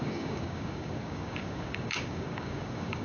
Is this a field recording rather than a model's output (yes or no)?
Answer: no